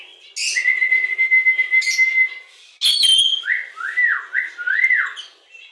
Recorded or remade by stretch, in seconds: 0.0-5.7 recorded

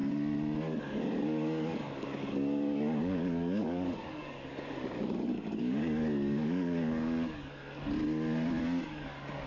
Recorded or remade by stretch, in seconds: 0.0-0.8 recorded; 0.8-7.6 remade; 7.6-8.6 recorded; 8.6-9.5 remade

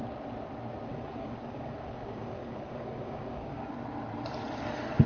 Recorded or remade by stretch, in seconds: 0.0-0.9 recorded; 0.9-3.7 remade; 3.7-5.1 recorded

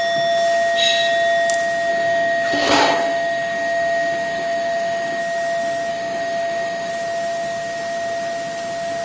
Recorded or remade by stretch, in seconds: 0.0-1.9 recorded; 1.9-5.2 remade; 5.2-5.9 recorded; 5.9-6.9 remade; 6.9-9.0 recorded

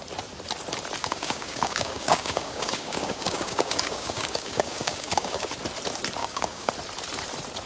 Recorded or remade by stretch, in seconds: 0.0-1.0 recorded; 1.0-5.5 remade; 5.5-6.2 recorded; 6.2-6.7 remade; 6.7-7.7 recorded

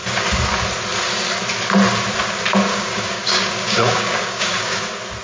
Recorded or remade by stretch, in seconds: 0.0-2.7 recorded; 2.7-4.8 remade; 4.8-5.2 recorded